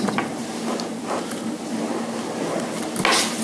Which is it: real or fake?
real